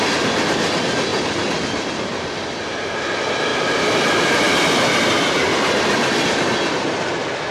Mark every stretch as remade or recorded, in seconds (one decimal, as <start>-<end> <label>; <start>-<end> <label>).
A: 0.0-1.1 recorded; 1.1-2.7 remade; 2.7-3.5 recorded; 3.5-6.4 remade; 6.4-7.5 recorded